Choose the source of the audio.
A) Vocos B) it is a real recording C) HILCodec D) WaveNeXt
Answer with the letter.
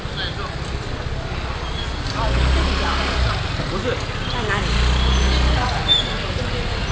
B